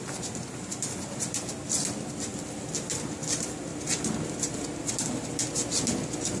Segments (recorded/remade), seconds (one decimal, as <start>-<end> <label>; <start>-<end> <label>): 0.0-6.4 recorded